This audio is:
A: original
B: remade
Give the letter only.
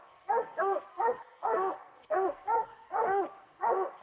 B